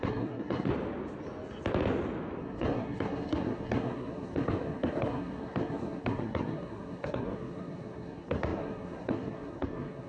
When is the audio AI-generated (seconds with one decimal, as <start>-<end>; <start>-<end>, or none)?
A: 0.0-0.7; 2.4-10.1